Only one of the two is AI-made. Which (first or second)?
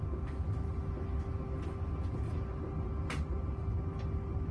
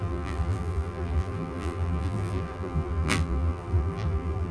second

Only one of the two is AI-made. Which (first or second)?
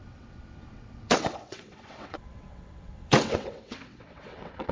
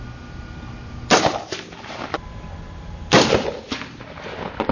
first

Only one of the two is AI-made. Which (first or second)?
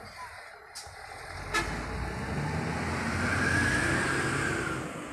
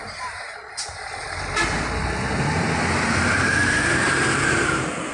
second